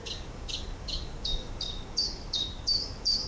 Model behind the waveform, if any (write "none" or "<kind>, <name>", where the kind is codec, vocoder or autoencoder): codec, DAC